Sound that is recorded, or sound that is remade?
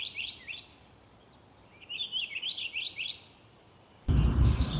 remade